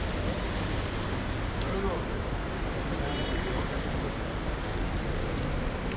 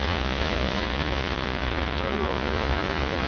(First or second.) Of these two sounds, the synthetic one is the second